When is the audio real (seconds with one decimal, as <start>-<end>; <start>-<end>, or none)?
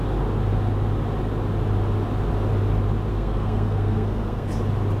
0.0-3.1; 4.5-5.0